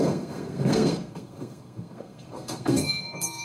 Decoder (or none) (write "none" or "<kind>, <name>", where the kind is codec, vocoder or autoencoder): codec, SNAC